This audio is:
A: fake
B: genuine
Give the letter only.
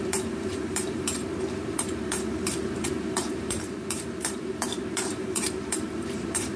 A